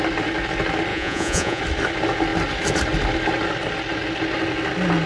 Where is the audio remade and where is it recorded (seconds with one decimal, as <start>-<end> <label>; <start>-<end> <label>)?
0.0-0.9 recorded; 0.9-1.6 remade; 1.6-5.1 recorded